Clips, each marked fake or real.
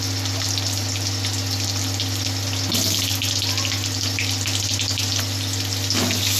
real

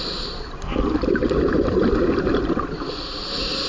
real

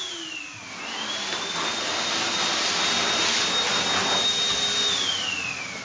real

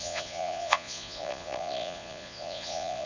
fake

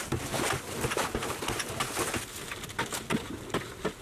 real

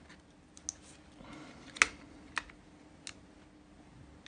real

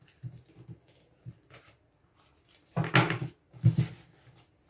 real